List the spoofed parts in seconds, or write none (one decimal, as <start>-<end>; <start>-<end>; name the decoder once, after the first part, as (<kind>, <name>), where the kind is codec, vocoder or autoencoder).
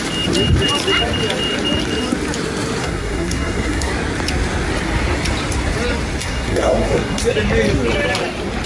2.8-3.9 (codec, SNAC); 6.2-7.2